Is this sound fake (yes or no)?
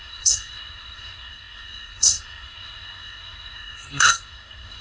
yes